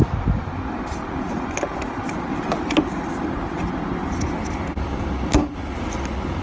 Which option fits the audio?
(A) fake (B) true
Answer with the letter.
B